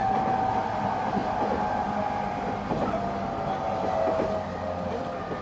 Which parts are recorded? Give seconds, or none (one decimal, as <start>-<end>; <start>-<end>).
0.0-5.4